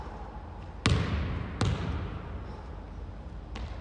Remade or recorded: recorded